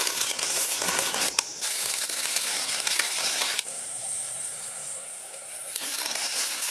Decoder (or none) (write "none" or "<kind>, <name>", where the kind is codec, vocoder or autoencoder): codec, SNAC